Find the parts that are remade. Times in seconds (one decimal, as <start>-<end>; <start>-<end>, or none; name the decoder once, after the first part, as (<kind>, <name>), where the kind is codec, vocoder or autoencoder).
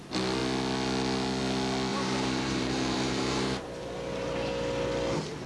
1.9-3.6 (vocoder, BigVGAN v2)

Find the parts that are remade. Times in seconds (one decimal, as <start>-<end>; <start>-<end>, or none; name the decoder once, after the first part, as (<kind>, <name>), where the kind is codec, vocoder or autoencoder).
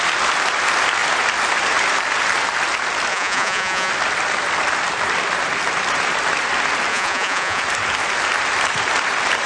3.1-3.9 (vocoder, Vocos); 6.9-7.6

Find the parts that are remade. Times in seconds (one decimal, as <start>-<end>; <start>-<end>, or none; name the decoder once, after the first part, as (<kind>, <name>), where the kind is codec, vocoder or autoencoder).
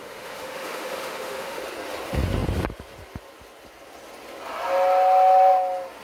0.0-1.6 (autoencoder, DAC-VAE)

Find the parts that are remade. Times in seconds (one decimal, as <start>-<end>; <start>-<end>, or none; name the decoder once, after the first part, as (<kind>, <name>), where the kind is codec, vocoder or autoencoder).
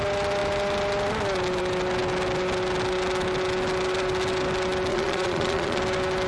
4.9-5.8 (vocoder, Vocos)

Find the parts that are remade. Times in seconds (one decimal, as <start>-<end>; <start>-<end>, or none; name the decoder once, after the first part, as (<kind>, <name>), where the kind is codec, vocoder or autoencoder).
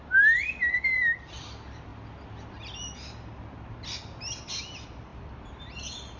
none